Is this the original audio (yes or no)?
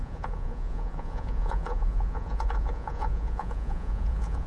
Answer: no